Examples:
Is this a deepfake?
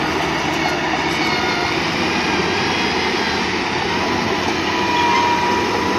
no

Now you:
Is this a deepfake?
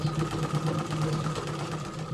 no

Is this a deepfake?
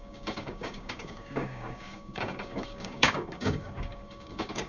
yes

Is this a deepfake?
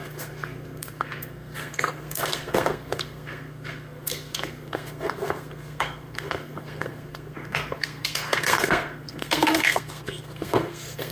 yes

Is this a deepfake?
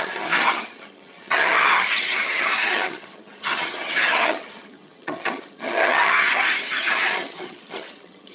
yes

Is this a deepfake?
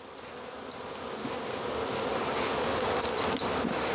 no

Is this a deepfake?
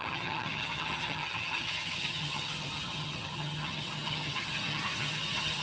yes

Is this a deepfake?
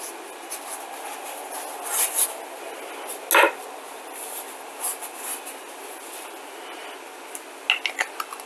no